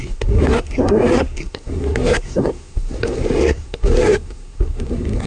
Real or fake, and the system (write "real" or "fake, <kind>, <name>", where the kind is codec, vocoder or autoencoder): fake, codec, SNAC